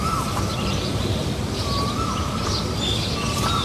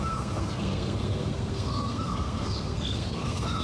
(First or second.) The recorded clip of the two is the first